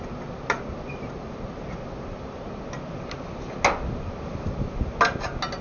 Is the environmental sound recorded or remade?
recorded